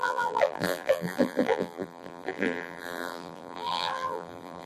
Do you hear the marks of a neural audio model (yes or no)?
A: yes